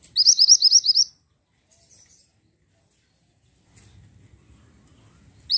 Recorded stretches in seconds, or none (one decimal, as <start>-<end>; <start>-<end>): 0.0-5.6